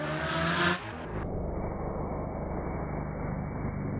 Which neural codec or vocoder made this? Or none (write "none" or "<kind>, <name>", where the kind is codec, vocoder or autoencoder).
none